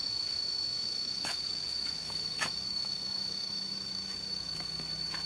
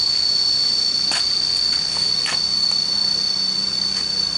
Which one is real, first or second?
second